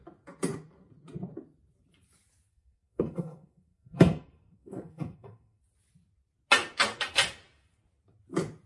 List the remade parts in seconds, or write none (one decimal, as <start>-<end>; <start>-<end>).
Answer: 2.5-5.6